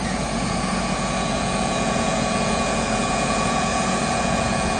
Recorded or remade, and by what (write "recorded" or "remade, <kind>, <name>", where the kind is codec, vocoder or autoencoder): remade, vocoder, Vocos